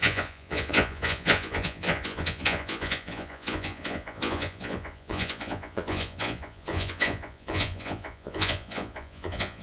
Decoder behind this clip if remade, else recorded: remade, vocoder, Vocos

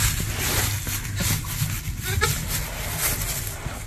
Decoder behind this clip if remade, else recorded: recorded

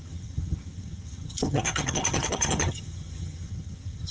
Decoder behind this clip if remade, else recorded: remade, vocoder, HiFi-GAN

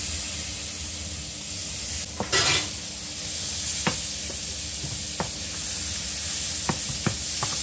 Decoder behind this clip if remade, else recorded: recorded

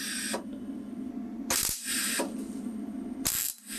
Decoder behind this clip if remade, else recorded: recorded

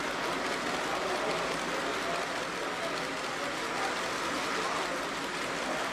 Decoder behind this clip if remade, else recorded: recorded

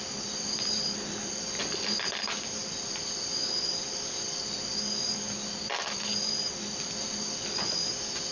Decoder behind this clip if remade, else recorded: remade, vocoder, BigVGAN v2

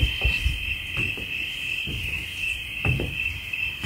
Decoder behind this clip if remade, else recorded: recorded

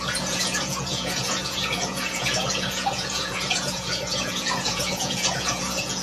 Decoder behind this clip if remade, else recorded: remade, vocoder, Vocos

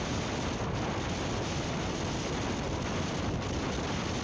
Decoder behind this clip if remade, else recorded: recorded